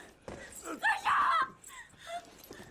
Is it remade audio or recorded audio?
recorded